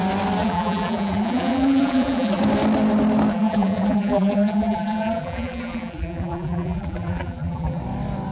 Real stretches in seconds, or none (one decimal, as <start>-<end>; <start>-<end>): 0.0-0.4; 2.4-3.3; 7.8-8.3